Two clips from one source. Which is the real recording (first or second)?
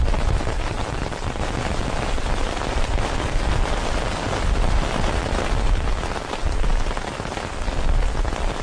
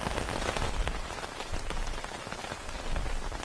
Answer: first